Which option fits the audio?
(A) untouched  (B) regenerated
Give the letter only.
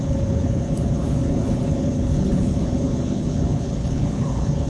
B